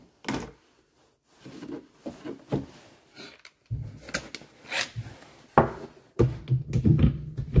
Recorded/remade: recorded